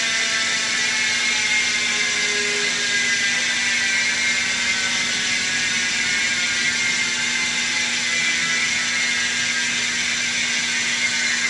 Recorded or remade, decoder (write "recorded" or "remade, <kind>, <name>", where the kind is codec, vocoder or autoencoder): recorded